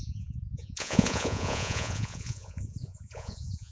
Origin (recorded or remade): remade